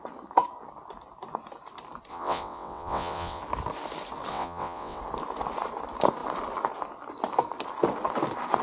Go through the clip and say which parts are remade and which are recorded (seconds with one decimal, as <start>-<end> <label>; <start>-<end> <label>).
0.0-2.1 recorded; 2.1-3.4 remade; 3.4-4.3 recorded; 4.3-5.0 remade; 5.0-8.6 recorded